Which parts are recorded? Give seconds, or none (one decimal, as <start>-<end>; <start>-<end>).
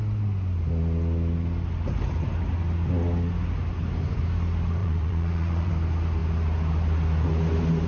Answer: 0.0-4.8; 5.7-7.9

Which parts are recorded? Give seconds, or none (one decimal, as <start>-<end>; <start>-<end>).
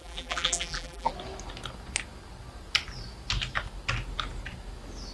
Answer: 1.1-5.1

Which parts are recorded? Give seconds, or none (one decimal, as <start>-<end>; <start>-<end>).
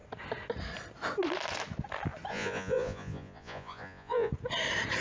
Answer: 0.0-2.3; 4.3-5.0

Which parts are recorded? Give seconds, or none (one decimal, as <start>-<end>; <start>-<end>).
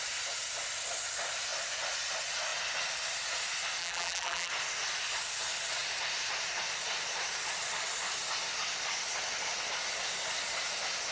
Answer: 0.0-3.8; 4.5-11.1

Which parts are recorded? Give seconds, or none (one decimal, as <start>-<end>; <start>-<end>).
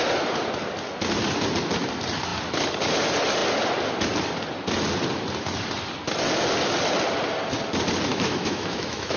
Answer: 0.0-8.1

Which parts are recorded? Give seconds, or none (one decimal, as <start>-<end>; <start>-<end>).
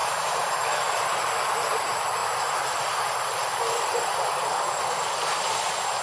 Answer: 0.5-6.0